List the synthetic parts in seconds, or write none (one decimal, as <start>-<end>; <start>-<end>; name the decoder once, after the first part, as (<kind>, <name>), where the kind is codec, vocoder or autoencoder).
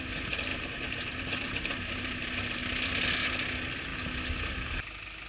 0.5-3.1 (vocoder, BigVGAN v2)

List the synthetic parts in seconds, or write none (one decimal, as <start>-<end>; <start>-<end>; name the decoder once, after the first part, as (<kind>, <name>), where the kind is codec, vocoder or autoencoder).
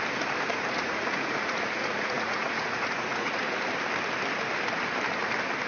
0.5-3.4 (vocoder, Vocos)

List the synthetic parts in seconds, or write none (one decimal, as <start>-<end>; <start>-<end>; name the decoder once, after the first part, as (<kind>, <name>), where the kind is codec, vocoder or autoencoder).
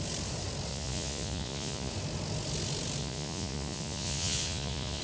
0.7-1.9 (vocoder, Vocos); 3.0-5.0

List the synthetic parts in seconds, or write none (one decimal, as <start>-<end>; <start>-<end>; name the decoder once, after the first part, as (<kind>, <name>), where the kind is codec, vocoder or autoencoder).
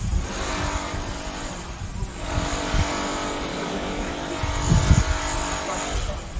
2.1-2.9 (codec, DAC); 3.5-4.1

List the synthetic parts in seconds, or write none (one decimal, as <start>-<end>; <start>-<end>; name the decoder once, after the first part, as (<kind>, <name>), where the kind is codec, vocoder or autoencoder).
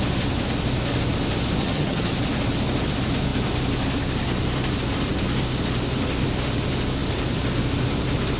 1.6-2.1 (vocoder, HiFi-GAN)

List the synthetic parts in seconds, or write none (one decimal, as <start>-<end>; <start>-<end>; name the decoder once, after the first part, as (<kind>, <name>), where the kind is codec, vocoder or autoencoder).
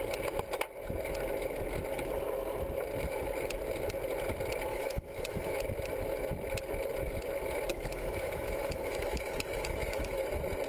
4.7-5.5 (autoencoder, DAC-VAE); 7.7-10.2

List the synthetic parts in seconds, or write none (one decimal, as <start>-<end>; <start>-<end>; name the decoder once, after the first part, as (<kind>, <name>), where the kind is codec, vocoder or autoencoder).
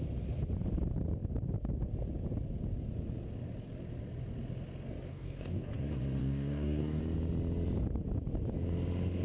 5.1-5.7 (codec, DAC); 6.2-7.0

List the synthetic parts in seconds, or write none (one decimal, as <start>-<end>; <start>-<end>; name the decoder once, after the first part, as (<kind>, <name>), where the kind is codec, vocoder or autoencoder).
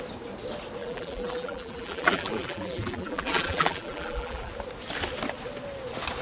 0.8-4.5 (vocoder, BigVGAN v2)